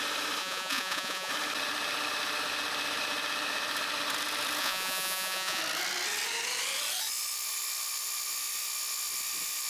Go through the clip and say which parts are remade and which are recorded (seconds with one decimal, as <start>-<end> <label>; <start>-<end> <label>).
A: 0.0-0.4 recorded; 0.4-1.3 remade; 1.3-4.6 recorded; 4.6-5.6 remade; 5.6-9.7 recorded